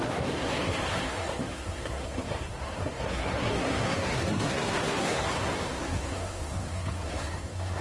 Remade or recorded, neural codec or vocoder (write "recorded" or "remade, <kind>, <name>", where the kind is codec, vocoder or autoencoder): remade, codec, SNAC